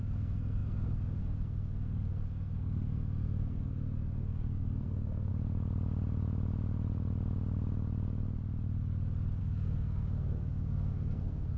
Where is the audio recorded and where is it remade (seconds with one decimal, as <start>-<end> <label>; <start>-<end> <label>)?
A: 0.0-5.3 remade; 5.3-9.4 recorded; 9.4-11.6 remade